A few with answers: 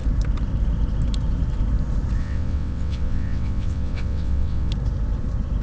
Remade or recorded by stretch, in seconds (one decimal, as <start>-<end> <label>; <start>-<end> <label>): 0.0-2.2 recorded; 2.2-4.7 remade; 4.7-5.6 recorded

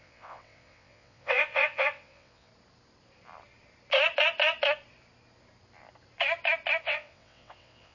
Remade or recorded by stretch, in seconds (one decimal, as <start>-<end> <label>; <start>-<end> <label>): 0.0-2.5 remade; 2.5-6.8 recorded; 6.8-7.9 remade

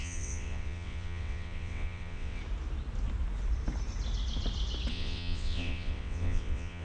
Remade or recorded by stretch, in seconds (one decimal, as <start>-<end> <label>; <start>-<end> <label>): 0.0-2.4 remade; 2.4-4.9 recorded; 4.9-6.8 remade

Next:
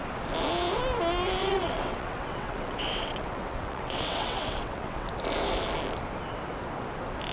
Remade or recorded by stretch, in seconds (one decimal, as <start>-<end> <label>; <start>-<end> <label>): 0.0-1.4 recorded; 1.4-5.1 remade; 5.1-7.3 recorded